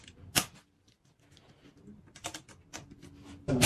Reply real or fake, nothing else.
real